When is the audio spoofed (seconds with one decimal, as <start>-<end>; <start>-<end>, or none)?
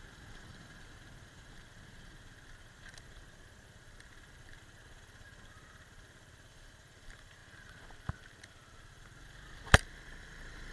0.0-7.4; 8.9-10.7